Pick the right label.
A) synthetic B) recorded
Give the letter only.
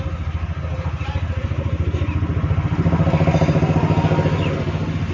B